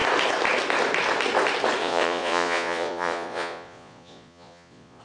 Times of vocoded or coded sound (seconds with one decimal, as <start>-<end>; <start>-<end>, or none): 1.8-5.0